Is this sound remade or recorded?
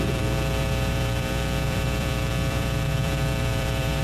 remade